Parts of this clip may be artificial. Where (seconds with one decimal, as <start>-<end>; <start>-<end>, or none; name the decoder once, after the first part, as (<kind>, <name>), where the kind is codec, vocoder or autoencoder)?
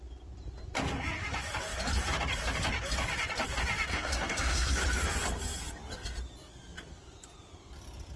3.9-4.7 (codec, SNAC)